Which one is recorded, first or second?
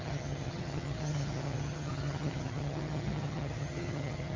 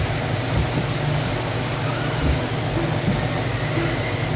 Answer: second